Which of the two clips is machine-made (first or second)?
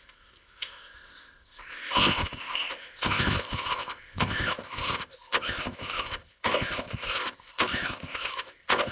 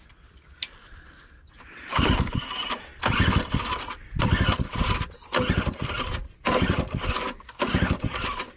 first